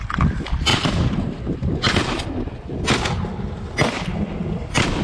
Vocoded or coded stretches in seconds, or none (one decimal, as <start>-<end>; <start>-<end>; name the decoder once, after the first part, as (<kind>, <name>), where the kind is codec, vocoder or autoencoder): 0.7-1.4 (vocoder, BigVGAN v2)